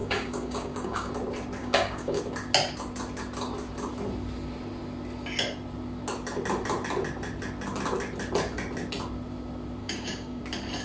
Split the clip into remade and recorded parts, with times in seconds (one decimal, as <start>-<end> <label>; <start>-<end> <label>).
0.0-1.1 remade; 1.1-1.6 recorded; 1.6-2.2 remade; 2.2-9.8 recorded; 9.8-10.4 remade; 10.4-10.8 recorded